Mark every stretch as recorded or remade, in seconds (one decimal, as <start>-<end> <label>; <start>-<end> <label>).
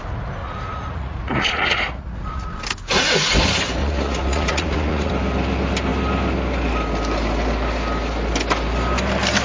0.0-0.4 recorded; 0.4-2.6 remade; 2.6-3.8 recorded; 3.8-5.1 remade; 5.1-9.4 recorded